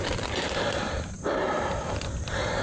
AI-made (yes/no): no